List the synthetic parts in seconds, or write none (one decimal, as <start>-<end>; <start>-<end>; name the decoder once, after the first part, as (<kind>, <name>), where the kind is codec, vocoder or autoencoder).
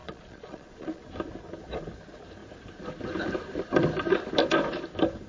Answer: 0.0-1.0 (vocoder, Vocos)